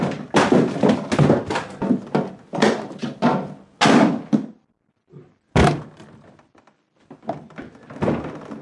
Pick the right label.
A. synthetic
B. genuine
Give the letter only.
B